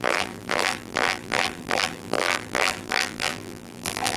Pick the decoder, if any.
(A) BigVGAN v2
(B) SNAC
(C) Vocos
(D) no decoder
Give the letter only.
A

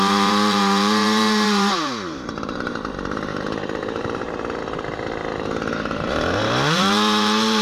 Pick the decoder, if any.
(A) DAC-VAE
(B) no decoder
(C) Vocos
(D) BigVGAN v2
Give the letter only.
D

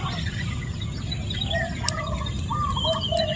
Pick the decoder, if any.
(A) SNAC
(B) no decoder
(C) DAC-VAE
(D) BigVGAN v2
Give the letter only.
B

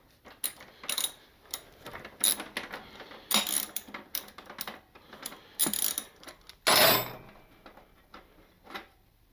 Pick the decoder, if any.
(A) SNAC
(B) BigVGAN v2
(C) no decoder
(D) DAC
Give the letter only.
C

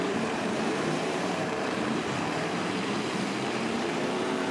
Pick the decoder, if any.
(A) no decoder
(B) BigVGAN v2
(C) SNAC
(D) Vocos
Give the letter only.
B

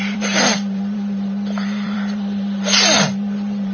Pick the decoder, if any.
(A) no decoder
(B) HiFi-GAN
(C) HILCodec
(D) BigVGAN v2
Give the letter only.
D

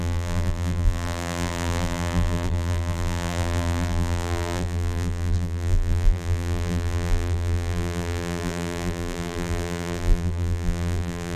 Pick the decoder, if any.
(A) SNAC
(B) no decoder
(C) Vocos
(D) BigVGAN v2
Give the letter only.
D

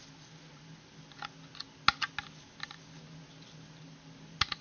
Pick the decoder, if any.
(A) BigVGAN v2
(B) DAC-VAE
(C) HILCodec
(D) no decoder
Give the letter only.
D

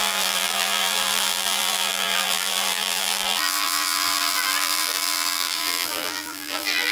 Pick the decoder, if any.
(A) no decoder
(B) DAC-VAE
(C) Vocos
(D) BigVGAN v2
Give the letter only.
D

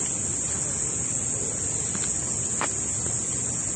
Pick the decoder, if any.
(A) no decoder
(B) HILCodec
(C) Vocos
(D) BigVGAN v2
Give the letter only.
A